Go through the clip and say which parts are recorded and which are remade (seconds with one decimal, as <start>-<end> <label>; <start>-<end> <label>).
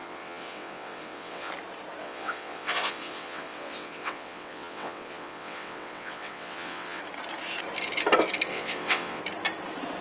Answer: 0.0-1.5 remade; 1.5-2.0 recorded; 2.0-7.0 remade; 7.0-8.5 recorded; 8.5-9.2 remade; 9.2-10.0 recorded